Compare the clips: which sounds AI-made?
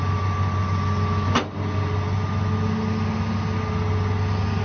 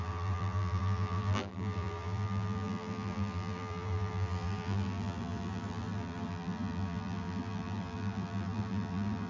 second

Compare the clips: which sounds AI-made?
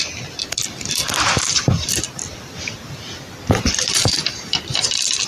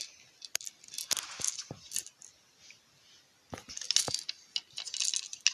first